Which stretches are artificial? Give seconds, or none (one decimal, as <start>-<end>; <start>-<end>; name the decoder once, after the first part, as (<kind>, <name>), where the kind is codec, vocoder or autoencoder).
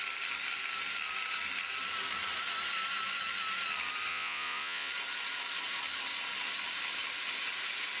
4.1-4.9 (vocoder, Vocos)